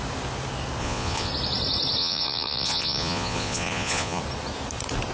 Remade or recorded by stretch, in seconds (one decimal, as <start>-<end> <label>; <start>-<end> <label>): 0.0-0.8 recorded; 0.8-1.3 remade; 1.3-2.0 recorded; 2.0-4.2 remade; 4.2-5.1 recorded